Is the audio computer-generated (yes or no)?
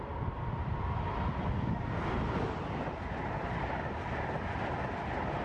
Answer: no